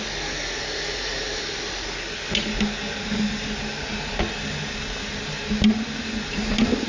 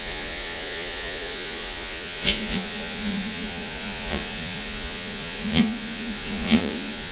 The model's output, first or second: second